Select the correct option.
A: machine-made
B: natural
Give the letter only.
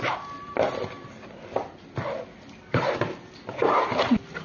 B